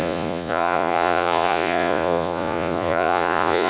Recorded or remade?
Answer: remade